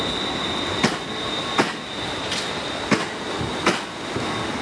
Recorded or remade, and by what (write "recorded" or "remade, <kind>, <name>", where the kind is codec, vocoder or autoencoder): recorded